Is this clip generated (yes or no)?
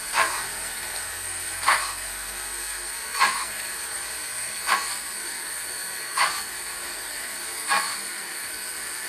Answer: yes